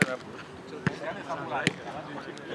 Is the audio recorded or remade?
recorded